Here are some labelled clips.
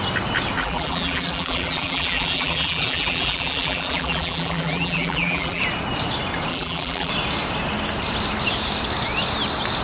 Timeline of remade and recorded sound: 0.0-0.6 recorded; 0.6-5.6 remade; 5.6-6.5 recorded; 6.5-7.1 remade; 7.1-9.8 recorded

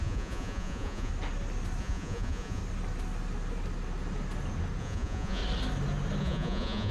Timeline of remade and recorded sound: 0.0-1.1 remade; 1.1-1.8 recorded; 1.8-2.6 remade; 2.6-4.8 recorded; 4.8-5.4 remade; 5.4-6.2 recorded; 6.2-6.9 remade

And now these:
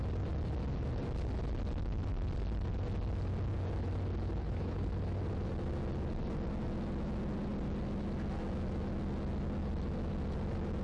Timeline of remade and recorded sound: 0.0-4.4 recorded; 4.4-4.9 remade; 4.9-10.8 recorded

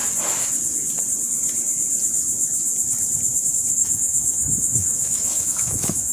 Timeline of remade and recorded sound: 0.0-3.7 recorded; 3.7-6.1 remade

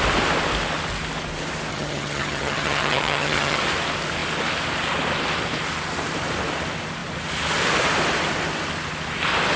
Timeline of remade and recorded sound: 0.0-1.7 recorded; 1.7-3.6 remade; 3.6-9.6 recorded

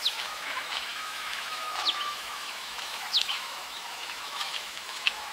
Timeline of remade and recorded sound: 0.0-5.3 remade

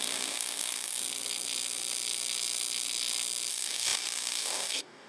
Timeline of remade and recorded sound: 0.0-1.0 remade; 1.0-3.5 recorded; 3.5-5.1 remade